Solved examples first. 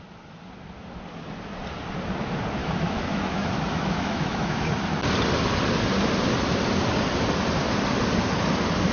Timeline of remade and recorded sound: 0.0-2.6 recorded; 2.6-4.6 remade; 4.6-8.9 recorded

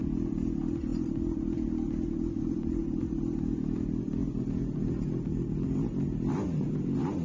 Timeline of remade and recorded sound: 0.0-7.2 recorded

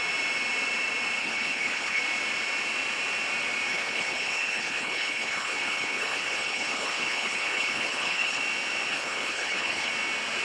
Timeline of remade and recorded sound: 0.0-1.2 recorded; 1.2-2.0 remade; 2.0-3.7 recorded; 3.7-8.4 remade; 8.4-8.9 recorded; 8.9-9.9 remade; 9.9-10.4 recorded

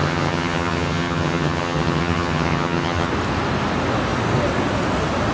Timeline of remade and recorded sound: 0.0-3.1 remade; 3.1-5.3 recorded